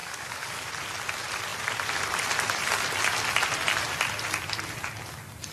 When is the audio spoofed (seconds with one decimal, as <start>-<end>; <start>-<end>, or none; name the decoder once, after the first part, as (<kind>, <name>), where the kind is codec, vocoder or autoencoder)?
0.0-0.7 (codec, DAC)